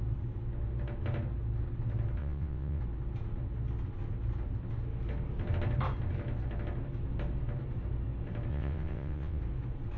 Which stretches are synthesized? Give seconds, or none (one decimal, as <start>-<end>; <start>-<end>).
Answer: 2.2-2.8; 8.5-9.4